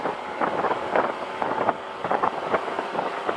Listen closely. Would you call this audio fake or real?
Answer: fake